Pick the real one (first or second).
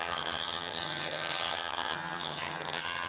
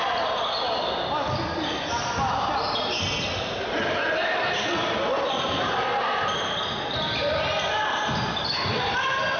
second